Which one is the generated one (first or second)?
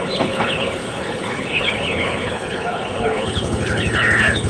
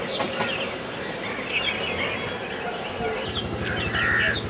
first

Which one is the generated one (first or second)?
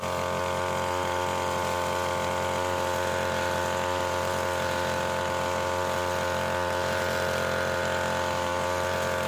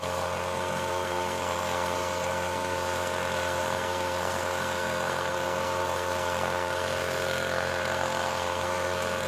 second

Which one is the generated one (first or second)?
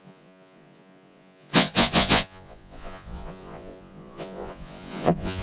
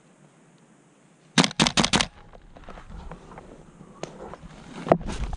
first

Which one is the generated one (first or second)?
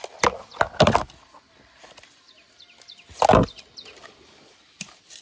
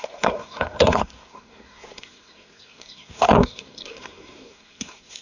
second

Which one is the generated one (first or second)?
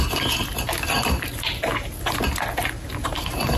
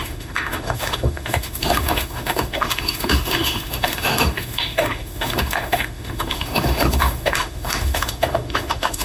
second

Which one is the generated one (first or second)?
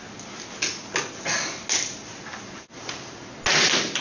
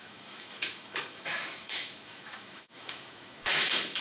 second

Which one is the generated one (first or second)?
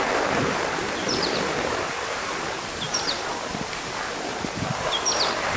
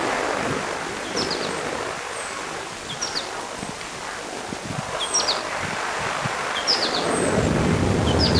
first